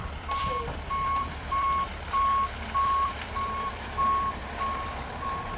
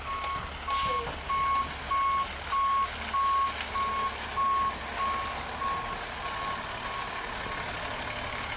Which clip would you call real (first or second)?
second